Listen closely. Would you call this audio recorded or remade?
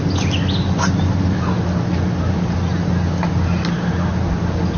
recorded